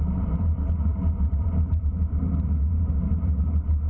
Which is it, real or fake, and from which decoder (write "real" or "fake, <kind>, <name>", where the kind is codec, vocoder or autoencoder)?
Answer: fake, vocoder, BigVGAN v2